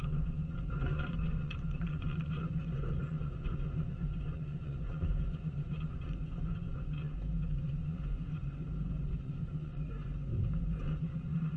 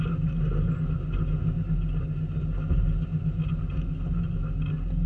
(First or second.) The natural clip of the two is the second